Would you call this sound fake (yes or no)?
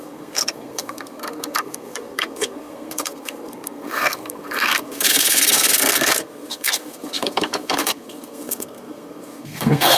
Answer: yes